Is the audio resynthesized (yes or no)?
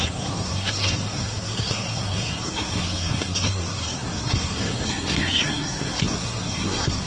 yes